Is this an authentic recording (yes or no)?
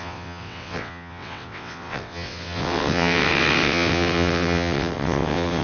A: no